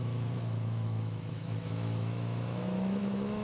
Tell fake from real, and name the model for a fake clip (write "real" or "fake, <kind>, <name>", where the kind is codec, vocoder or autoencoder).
fake, autoencoder, DAC-VAE